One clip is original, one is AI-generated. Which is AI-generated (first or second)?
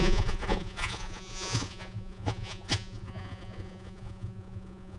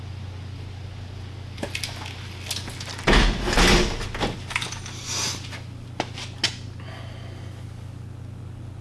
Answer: first